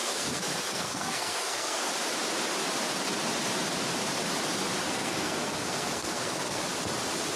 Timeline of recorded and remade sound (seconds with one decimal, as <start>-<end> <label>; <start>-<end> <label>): 0.0-1.9 remade; 1.9-4.9 recorded; 4.9-6.6 remade; 6.6-7.4 recorded